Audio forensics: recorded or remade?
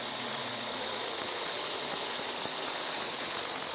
remade